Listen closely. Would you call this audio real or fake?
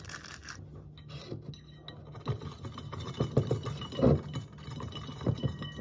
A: real